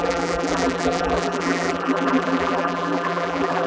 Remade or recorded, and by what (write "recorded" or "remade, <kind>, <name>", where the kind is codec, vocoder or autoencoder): remade, vocoder, BigVGAN v2